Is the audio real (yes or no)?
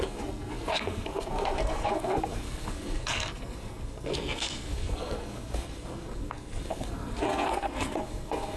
no